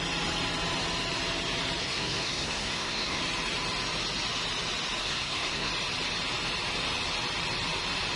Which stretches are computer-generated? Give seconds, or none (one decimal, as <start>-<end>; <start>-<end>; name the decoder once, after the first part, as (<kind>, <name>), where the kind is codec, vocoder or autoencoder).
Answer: 1.8-3.2 (codec, SNAC); 5.0-5.7